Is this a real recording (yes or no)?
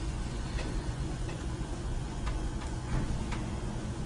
no